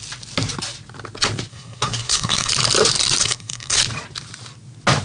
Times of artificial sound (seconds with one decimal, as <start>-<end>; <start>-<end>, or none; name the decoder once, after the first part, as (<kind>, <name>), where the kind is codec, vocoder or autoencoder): 1.5-2.5 (codec, SNAC); 3.2-3.8